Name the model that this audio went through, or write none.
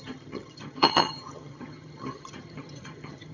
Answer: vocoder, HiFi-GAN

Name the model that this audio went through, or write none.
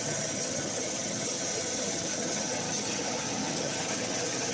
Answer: vocoder, HiFi-GAN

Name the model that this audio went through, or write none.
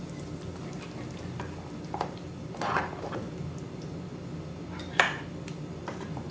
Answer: none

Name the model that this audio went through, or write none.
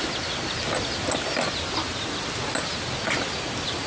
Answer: none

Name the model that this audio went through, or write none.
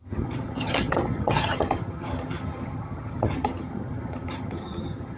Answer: vocoder, HiFi-GAN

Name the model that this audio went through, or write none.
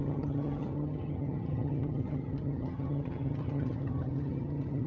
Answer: vocoder, HiFi-GAN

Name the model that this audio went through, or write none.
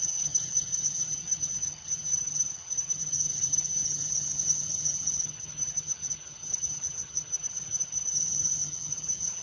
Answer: vocoder, HiFi-GAN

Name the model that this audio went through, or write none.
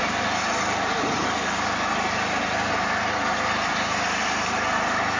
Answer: none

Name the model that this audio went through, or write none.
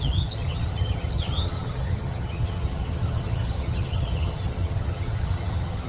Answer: vocoder, HiFi-GAN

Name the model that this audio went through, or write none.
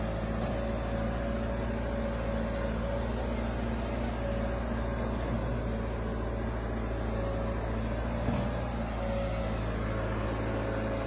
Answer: none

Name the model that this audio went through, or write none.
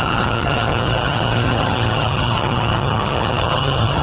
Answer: vocoder, HiFi-GAN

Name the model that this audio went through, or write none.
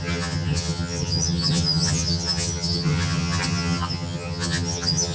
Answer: vocoder, HiFi-GAN